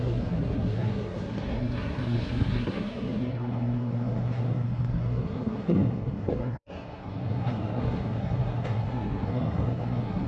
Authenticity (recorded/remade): remade